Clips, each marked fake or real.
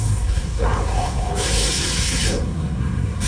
fake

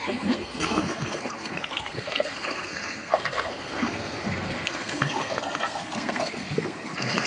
fake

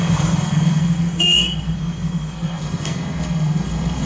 fake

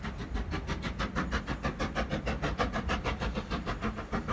real